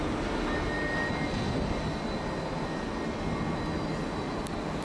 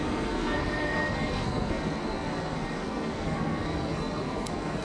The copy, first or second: second